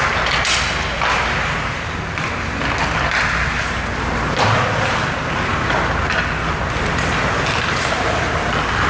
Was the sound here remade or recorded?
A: recorded